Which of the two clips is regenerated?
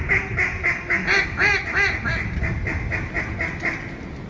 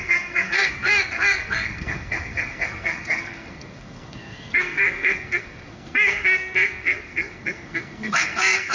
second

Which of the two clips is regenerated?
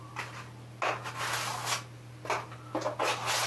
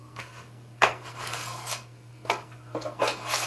second